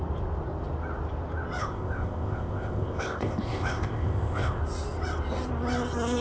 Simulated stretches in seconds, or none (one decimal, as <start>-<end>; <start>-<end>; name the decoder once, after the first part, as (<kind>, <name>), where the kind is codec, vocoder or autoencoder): 1.6-4.6 (codec, ZipCodec)

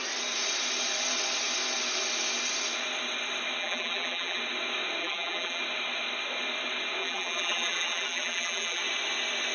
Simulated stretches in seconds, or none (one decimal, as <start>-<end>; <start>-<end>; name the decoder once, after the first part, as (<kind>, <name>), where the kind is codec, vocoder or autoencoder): 3.6-4.4 (vocoder, BigVGAN v2); 5.0-5.6; 7.0-8.8

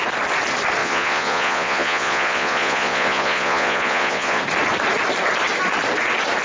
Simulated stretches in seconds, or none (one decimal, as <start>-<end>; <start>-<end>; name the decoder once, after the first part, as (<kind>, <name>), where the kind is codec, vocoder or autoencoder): 0.8-4.4 (vocoder, Vocos)

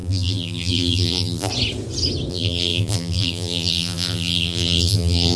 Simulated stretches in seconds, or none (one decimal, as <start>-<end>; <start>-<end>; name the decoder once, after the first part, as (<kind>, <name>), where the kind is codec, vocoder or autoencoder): 0.0-1.5 (vocoder, BigVGAN v2); 2.3-5.4

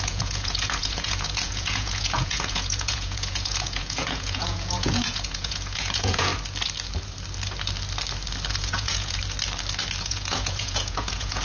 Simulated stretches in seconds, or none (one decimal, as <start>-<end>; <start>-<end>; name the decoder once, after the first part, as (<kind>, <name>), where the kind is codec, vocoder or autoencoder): 0.0-6.3 (vocoder, Vocos); 8.5-9.2; 10.0-11.4

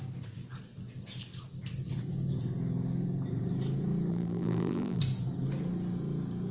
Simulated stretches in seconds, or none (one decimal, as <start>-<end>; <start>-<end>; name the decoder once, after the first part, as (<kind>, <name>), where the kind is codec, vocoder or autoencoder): 4.1-5.0 (vocoder, BigVGAN v2)

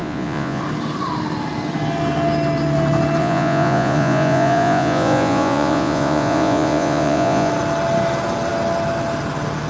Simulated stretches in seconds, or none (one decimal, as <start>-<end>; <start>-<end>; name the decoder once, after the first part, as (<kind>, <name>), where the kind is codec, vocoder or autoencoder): 0.0-0.6 (vocoder, Vocos); 3.2-7.5